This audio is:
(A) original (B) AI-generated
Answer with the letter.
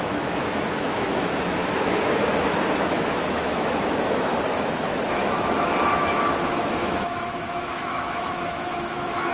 B